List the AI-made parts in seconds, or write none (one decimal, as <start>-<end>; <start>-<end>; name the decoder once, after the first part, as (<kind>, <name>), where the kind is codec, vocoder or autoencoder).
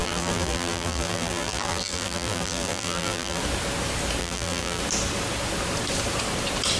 0.0-3.4 (vocoder, BigVGAN v2); 4.2-4.8